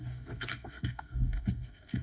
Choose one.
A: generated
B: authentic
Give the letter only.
A